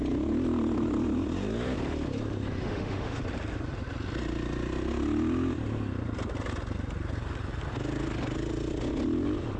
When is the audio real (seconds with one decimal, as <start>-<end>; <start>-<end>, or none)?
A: 0.0-2.6; 3.2-9.6